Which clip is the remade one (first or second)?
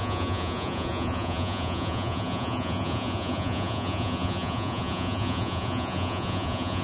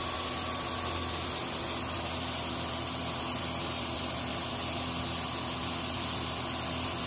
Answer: first